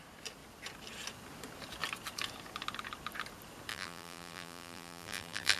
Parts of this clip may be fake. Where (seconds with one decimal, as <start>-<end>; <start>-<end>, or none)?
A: 3.7-5.6

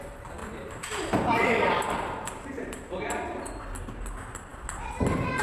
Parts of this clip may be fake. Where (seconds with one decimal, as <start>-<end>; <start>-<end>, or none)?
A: 0.4-3.6